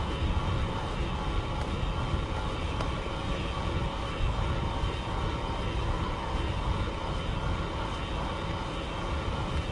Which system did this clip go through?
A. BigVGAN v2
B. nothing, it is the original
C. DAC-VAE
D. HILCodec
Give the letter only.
B